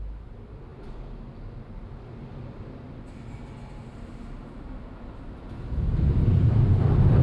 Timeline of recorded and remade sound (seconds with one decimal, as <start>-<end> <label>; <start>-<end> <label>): 0.0-7.2 recorded